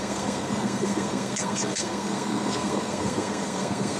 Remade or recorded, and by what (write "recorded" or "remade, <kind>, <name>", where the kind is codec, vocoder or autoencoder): remade, codec, SNAC